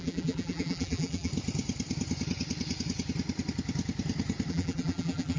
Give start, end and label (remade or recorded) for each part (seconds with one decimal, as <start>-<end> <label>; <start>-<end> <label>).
0.0-1.3 remade; 1.3-4.5 recorded; 4.5-5.4 remade